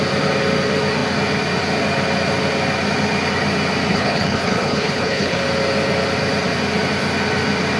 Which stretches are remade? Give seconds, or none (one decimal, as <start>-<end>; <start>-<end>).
3.9-5.4